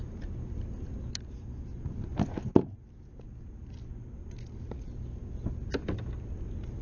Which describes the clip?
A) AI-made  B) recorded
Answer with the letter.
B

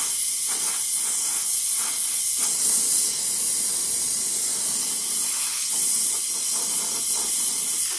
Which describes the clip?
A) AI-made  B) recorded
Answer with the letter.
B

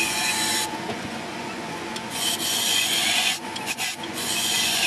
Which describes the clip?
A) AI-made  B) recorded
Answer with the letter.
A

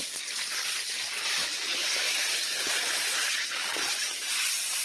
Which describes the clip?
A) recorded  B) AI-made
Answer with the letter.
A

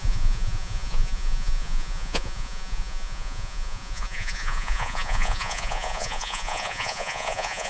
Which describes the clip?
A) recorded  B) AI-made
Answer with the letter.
B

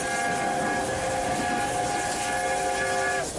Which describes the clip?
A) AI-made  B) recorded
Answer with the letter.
B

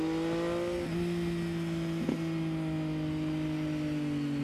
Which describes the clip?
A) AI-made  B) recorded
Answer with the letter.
B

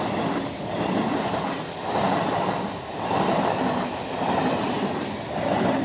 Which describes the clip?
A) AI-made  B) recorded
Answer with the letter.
B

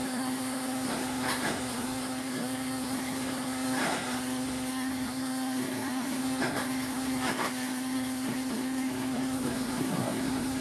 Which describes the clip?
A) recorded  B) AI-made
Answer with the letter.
B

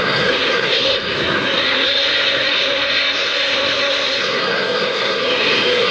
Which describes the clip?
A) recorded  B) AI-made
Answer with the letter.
B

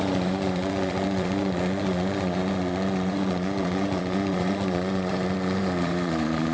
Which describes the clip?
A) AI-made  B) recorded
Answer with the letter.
A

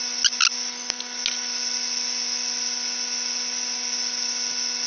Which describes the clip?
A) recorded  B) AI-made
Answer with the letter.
A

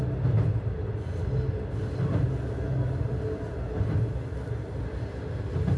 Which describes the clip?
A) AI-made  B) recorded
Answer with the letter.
B